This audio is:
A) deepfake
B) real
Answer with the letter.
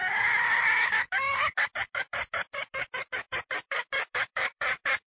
A